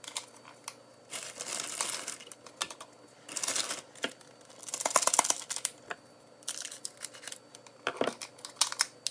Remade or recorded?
recorded